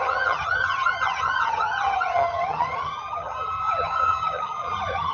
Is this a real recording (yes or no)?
no